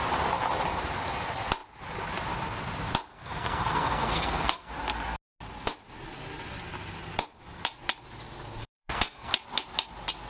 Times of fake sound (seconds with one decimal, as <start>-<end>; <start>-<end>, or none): 3.1-4.7; 8.6-9.3